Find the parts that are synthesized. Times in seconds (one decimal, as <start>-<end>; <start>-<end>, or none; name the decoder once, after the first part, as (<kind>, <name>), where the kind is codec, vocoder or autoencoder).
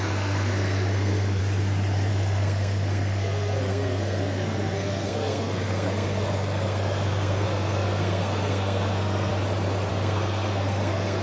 0.0-1.4 (codec, SNAC); 2.1-9.3; 9.9-11.2